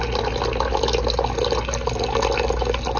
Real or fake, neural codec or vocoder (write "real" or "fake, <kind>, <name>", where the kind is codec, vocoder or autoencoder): real